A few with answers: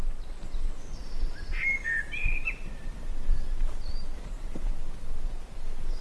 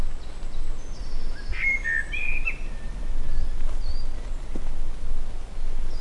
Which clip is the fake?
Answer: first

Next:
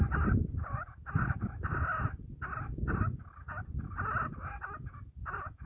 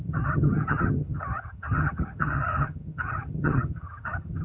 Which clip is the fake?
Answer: second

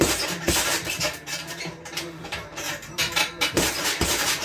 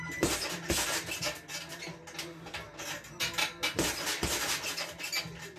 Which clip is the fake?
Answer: first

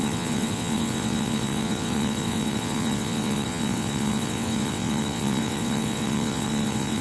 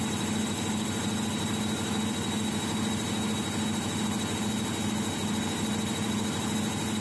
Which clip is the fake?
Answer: first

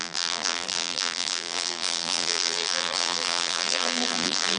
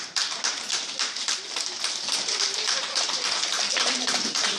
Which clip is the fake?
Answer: first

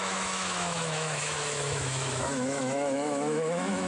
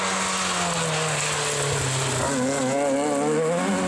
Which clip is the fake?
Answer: first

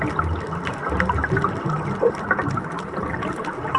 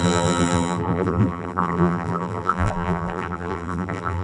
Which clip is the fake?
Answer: second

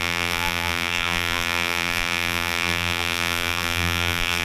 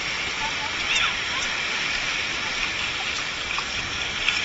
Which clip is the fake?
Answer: first